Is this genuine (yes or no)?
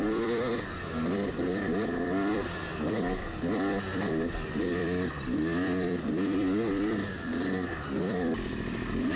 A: no